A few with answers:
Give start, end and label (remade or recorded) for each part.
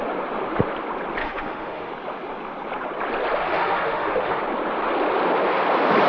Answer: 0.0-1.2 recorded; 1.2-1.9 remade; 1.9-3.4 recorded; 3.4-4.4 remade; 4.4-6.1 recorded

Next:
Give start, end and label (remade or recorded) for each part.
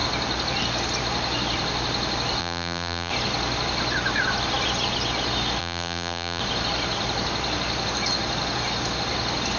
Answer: 0.0-2.4 recorded; 2.4-3.1 remade; 3.1-5.6 recorded; 5.6-6.4 remade; 6.4-9.6 recorded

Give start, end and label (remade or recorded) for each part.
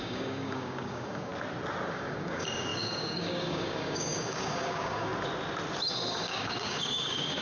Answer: 0.0-1.3 remade; 1.3-1.9 recorded; 1.9-5.1 remade; 5.1-6.1 recorded; 6.1-7.4 remade